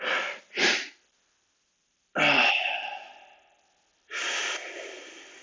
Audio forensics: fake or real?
real